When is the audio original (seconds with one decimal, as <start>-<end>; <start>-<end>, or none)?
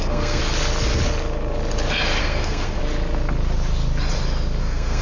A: 0.4-2.2; 2.8-4.6